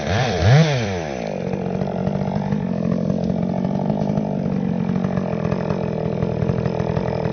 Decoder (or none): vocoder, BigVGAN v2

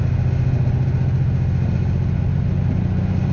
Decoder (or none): none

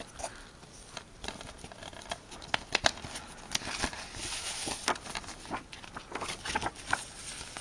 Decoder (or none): none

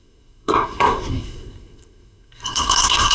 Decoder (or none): codec, SNAC